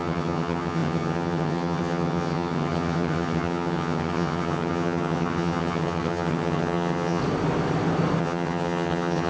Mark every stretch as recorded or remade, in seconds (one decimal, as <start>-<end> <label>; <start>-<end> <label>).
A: 0.0-7.2 remade; 7.2-8.2 recorded; 8.2-9.3 remade